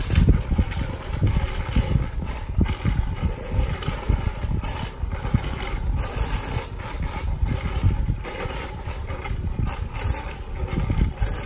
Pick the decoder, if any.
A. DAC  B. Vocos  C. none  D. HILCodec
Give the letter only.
C